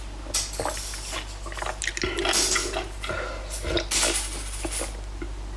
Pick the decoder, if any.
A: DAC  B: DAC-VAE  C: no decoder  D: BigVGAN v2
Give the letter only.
C